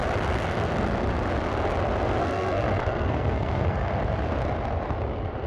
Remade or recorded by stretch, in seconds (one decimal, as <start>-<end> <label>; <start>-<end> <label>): 0.0-2.2 recorded; 2.2-3.9 remade; 3.9-5.5 recorded